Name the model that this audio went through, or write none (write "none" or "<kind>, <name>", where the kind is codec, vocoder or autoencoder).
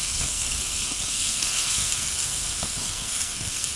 codec, SNAC